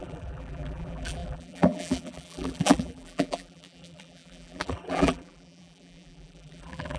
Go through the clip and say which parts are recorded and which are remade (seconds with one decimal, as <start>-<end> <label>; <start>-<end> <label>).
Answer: 0.0-7.0 remade